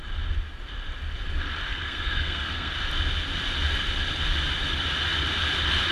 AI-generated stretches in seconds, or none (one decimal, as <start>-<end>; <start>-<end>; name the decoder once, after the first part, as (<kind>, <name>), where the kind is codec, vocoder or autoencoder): 1.7-2.7 (codec, SNAC)